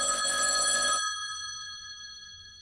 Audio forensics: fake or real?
fake